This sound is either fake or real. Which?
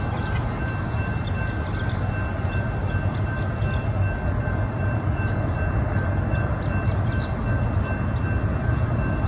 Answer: real